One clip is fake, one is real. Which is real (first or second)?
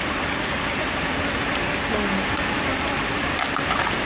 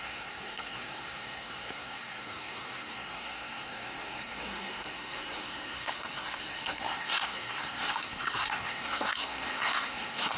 first